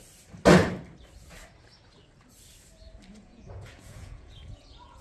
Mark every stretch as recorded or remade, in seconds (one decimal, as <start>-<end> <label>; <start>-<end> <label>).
0.0-3.1 recorded; 3.1-5.0 remade